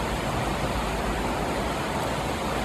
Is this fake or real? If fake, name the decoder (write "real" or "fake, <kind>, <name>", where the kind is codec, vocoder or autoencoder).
real